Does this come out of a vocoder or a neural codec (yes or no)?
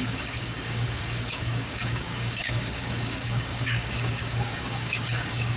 yes